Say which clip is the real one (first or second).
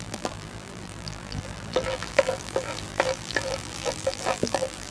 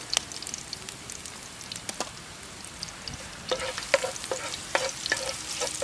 second